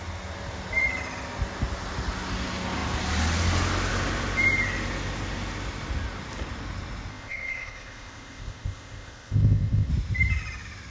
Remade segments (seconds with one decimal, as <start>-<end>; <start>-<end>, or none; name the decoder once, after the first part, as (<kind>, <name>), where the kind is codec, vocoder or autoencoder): 7.1-9.9 (codec, ZipCodec)